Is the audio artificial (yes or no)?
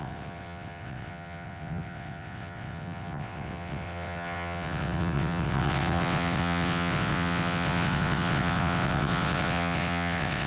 yes